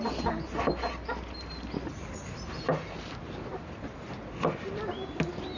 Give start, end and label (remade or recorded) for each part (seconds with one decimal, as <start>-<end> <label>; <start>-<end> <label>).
0.0-5.6 recorded